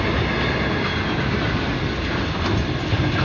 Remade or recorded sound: recorded